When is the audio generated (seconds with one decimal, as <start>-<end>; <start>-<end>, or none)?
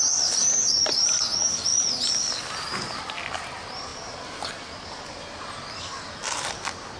none